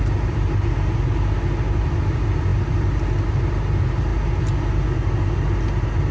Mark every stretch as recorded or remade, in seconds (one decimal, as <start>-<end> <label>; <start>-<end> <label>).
0.0-6.1 recorded